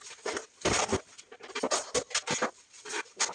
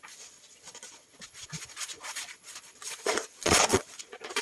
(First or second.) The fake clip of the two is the second